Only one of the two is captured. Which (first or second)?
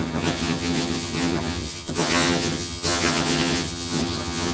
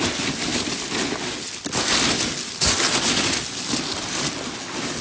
second